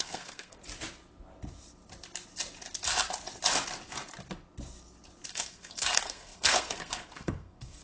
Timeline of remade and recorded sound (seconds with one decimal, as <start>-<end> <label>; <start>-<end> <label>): 0.0-0.6 remade; 0.6-5.3 recorded; 5.3-7.8 remade